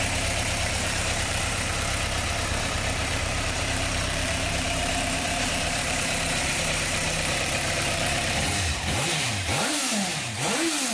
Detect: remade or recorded remade